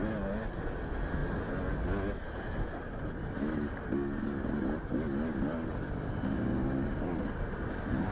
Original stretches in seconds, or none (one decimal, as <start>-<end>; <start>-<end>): 0.0-8.1